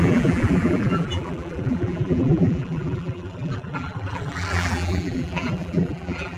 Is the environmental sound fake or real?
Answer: fake